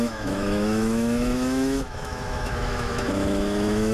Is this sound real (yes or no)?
no